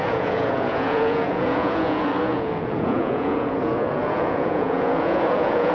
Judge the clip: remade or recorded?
remade